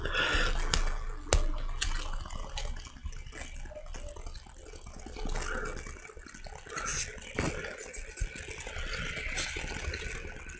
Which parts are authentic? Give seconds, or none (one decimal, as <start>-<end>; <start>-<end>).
0.0-10.6